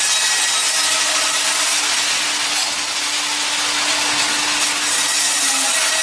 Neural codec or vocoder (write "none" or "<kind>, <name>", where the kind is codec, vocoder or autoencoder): none